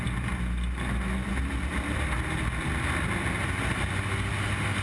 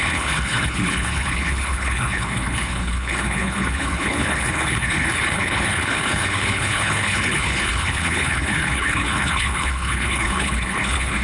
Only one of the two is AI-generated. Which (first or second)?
second